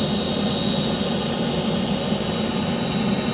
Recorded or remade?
recorded